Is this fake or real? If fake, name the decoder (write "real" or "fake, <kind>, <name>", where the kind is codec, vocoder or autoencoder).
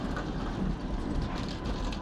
fake, vocoder, BigVGAN v2